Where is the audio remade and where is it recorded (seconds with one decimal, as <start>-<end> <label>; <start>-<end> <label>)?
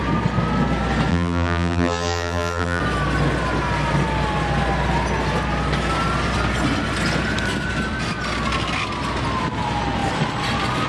0.0-1.1 recorded; 1.1-2.8 remade; 2.8-10.9 recorded